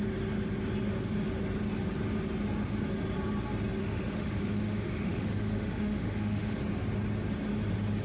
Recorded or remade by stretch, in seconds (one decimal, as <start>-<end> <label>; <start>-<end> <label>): 0.0-3.8 recorded; 3.8-6.6 remade; 6.6-8.0 recorded